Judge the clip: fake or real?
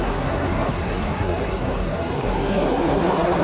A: fake